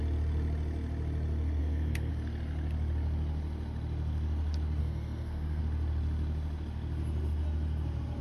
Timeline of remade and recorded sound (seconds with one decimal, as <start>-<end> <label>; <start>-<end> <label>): 0.0-1.6 recorded; 1.6-2.1 remade; 2.1-4.8 recorded; 4.8-5.6 remade; 5.6-8.2 recorded